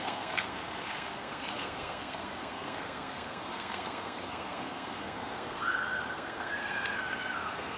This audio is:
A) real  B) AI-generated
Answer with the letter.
B